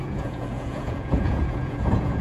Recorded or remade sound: remade